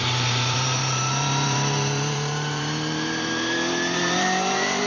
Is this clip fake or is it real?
fake